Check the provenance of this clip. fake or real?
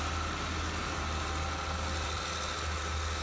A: real